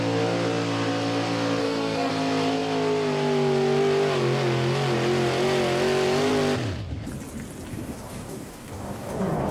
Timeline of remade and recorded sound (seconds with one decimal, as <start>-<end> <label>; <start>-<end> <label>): 0.0-1.6 recorded; 1.6-2.1 remade; 2.1-7.7 recorded; 7.7-9.5 remade